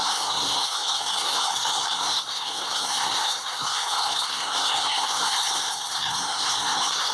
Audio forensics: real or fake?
fake